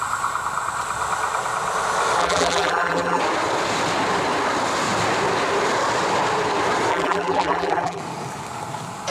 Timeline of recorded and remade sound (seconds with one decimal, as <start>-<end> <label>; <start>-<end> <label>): 0.0-2.2 recorded; 2.2-3.2 remade; 3.2-6.9 recorded; 6.9-8.0 remade; 8.0-9.1 recorded